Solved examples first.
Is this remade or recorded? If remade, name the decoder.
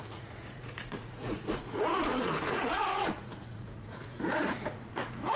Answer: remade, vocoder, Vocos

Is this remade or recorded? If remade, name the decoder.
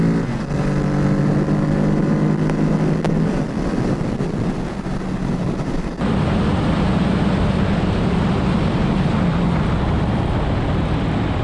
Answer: recorded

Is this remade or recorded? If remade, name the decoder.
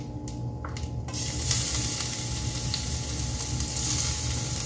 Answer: recorded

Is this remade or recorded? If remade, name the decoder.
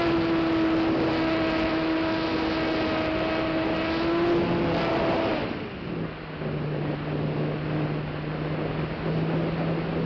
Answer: recorded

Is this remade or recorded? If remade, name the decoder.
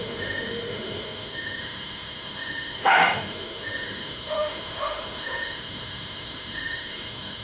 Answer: remade, autoencoder, DAC-VAE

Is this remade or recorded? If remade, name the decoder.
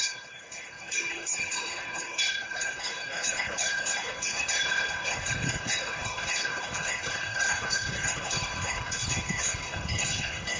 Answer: remade, codec, HILCodec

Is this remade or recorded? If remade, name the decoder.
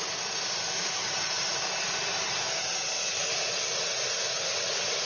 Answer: recorded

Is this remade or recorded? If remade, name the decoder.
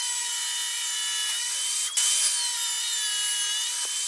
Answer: recorded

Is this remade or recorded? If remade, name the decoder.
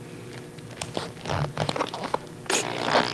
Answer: recorded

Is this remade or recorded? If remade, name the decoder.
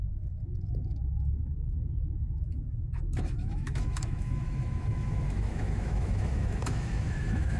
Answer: remade, autoencoder, DAC-VAE